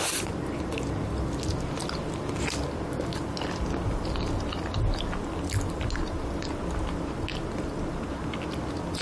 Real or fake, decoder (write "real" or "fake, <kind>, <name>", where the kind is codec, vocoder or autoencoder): real